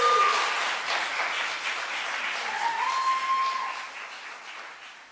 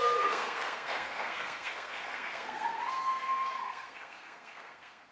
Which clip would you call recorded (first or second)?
first